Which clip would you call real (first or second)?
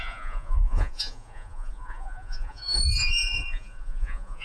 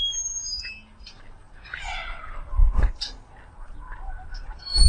second